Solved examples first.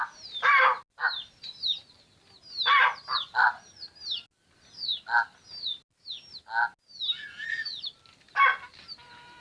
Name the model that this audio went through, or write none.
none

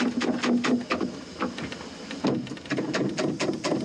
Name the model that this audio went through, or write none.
none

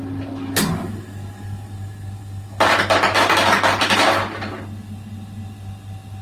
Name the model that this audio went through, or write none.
none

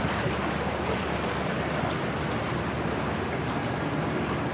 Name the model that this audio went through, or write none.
none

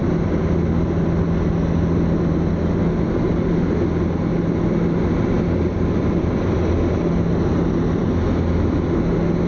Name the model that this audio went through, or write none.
none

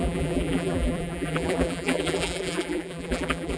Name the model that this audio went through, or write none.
vocoder, BigVGAN v2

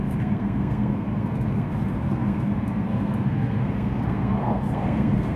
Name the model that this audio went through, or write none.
codec, SNAC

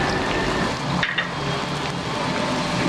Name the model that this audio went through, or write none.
none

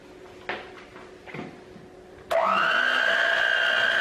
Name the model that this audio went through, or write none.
none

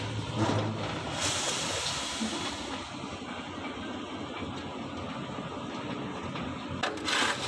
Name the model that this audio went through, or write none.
none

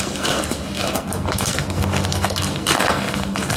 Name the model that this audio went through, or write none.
codec, SNAC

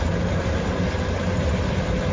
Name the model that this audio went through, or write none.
none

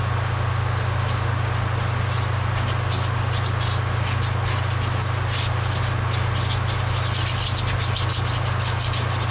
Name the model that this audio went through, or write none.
none